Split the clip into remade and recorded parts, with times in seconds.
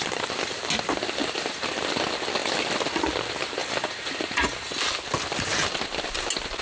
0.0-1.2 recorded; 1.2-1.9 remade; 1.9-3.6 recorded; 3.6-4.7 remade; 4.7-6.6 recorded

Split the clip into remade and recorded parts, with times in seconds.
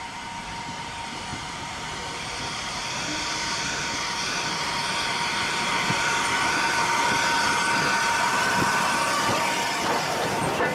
0.0-4.8 remade; 4.8-10.0 recorded; 10.0-10.7 remade